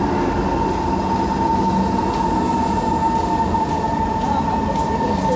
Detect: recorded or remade recorded